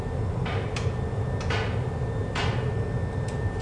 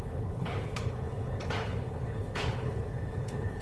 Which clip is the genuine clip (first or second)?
first